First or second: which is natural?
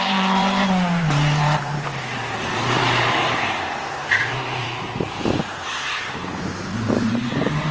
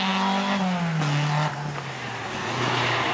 second